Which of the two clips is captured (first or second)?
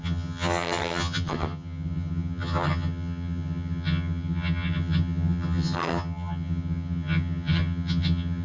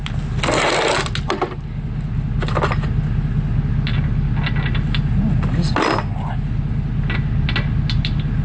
second